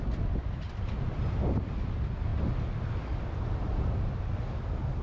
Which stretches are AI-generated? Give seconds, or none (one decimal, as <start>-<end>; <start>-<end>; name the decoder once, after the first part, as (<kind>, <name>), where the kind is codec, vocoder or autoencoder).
none